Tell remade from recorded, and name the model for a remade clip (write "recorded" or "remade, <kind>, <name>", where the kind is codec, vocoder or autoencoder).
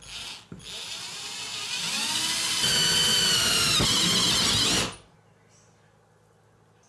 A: recorded